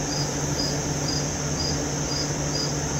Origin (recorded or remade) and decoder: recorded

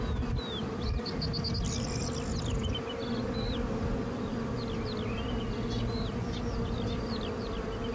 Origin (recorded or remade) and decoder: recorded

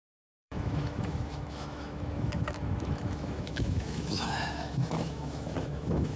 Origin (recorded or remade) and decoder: remade, autoencoder, DAC-VAE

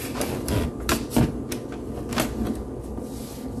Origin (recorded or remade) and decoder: recorded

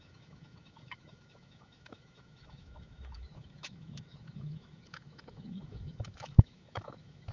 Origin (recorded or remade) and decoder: remade, autoencoder, DAC-VAE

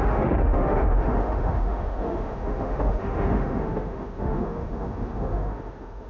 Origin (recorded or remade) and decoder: remade, autoencoder, DAC-VAE